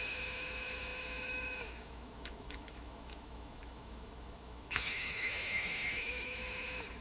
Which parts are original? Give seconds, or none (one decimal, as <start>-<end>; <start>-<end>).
none